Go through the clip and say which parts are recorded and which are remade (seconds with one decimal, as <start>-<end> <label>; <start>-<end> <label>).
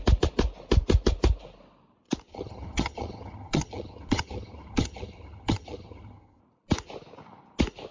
0.0-2.3 recorded; 2.3-6.4 remade; 6.4-7.9 recorded